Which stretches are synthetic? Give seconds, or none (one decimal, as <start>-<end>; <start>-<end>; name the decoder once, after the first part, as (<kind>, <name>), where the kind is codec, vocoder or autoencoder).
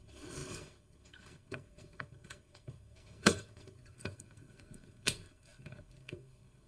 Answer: 0.0-6.7 (codec, SNAC)